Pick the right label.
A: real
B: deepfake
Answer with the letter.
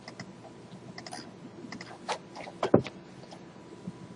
A